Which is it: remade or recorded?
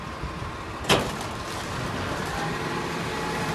recorded